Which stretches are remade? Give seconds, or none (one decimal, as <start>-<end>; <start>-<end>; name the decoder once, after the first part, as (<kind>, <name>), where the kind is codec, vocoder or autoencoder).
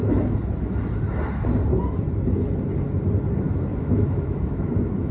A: 3.7-4.6 (autoencoder, DAC-VAE)